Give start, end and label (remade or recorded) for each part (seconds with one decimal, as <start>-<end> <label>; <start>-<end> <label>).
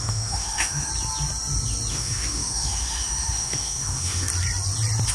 0.0-0.9 remade; 0.9-1.9 recorded; 1.9-4.3 remade; 4.3-5.1 recorded